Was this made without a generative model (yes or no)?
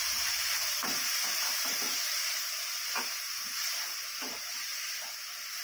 no